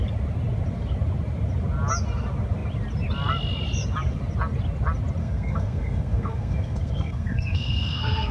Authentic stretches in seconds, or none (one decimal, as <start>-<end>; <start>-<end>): 0.0-5.2